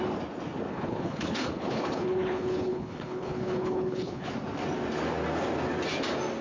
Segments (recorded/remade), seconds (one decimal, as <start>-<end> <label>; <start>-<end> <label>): 0.0-0.7 recorded; 0.7-4.3 remade; 4.3-6.4 recorded

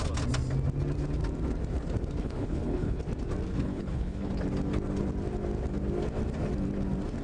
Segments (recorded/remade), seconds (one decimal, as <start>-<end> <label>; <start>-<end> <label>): 0.0-2.2 recorded; 2.2-3.0 remade; 3.0-3.5 recorded; 3.5-4.3 remade; 4.3-7.2 recorded

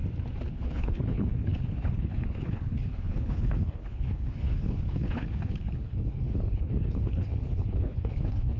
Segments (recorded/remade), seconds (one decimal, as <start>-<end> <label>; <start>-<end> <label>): 0.0-0.5 recorded; 0.5-8.6 remade

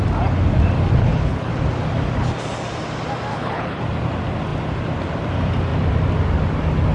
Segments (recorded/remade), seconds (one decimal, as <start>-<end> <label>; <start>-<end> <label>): 0.0-1.0 recorded; 1.0-1.5 remade; 1.5-3.3 recorded; 3.3-3.8 remade; 3.8-6.9 recorded

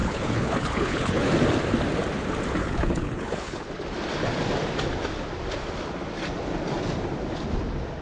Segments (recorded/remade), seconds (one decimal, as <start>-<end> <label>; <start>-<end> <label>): 0.0-1.3 remade; 1.3-2.6 recorded; 2.6-3.7 remade; 3.7-8.0 recorded

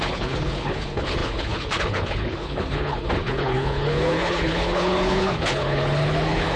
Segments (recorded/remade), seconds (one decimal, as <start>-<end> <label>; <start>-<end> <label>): 0.0-6.6 remade